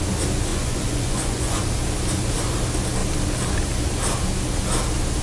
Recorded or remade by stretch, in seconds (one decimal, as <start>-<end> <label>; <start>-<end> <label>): 0.0-0.5 recorded; 0.5-1.6 remade; 1.6-5.2 recorded